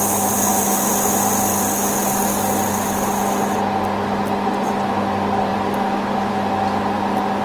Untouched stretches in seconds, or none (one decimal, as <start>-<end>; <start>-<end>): 0.0-7.4